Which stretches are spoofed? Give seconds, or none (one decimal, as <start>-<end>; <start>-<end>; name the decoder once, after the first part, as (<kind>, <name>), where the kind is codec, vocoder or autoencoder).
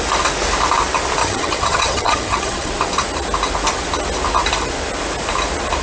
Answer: 1.2-2.7 (vocoder, HiFi-GAN)